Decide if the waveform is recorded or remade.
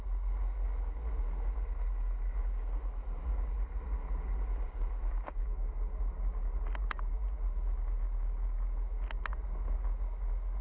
recorded